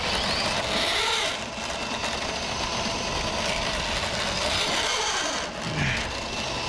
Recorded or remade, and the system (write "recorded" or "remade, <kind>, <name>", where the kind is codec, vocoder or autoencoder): recorded